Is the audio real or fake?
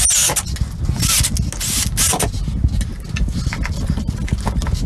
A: real